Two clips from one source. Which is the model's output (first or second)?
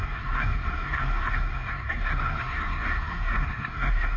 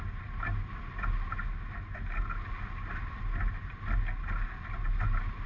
first